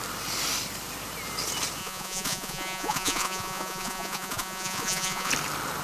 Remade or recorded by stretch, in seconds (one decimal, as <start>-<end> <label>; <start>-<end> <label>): 0.0-1.8 recorded; 1.8-5.3 remade; 5.3-5.8 recorded